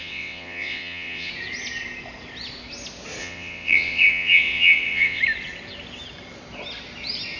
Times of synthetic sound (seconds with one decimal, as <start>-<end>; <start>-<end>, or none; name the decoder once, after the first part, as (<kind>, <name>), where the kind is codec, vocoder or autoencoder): 0.0-1.3 (vocoder, WaveNeXt); 3.2-5.2